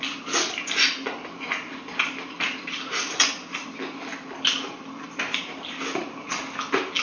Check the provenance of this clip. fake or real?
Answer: real